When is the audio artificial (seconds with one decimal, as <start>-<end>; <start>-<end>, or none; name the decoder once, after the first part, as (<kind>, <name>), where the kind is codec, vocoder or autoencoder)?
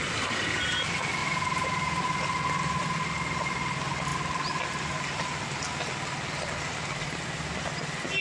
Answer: 1.2-2.0 (vocoder, BigVGAN v2)